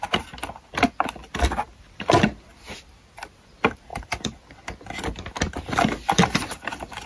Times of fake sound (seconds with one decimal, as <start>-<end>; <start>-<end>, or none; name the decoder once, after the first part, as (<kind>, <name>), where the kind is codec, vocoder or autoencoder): 1.2-2.0 (vocoder, BigVGAN v2); 3.9-4.6